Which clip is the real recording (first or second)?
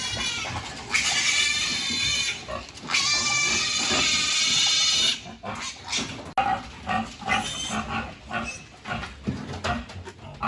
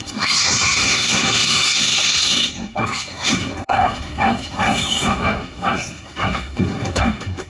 first